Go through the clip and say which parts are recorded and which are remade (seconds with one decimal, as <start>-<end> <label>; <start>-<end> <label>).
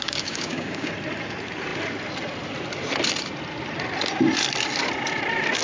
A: 0.0-0.9 remade; 0.9-5.6 recorded